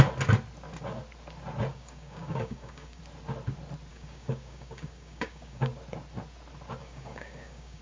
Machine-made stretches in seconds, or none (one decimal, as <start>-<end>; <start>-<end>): 1.7-3.0; 3.9-5.7; 6.8-7.8